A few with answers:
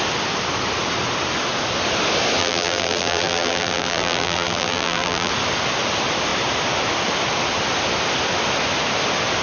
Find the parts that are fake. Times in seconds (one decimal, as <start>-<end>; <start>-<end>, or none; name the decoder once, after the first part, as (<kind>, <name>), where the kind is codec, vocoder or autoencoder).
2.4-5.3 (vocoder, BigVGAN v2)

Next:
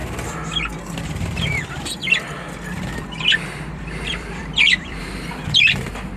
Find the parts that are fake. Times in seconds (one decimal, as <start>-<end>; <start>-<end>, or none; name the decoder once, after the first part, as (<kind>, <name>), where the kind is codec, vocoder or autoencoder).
0.8-6.2 (vocoder, BigVGAN v2)

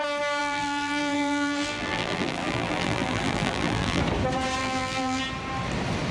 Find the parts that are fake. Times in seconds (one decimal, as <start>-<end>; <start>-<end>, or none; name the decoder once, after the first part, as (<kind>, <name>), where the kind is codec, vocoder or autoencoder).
0.4-4.0 (vocoder, BigVGAN v2); 4.6-5.2